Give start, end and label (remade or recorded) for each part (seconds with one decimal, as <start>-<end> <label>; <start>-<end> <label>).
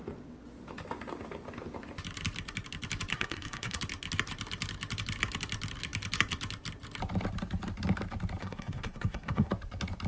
0.0-3.1 recorded; 3.1-3.8 remade; 3.8-8.4 recorded; 8.4-9.5 remade; 9.5-10.1 recorded